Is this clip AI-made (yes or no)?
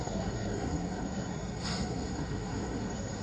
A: yes